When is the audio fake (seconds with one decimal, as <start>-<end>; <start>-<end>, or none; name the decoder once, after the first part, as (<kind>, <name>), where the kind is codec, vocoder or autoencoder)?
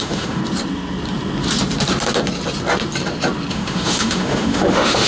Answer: 0.0-0.4 (autoencoder, DAC-VAE); 3.5-5.1